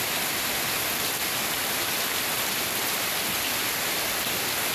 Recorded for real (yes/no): no